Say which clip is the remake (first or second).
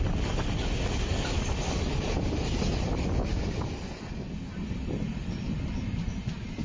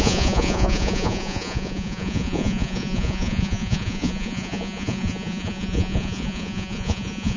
second